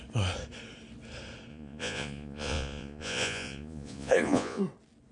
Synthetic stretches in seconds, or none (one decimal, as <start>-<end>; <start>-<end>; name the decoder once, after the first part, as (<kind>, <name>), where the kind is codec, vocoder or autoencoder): 1.5-4.6 (vocoder, Vocos)